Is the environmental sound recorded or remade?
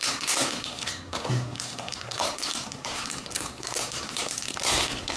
remade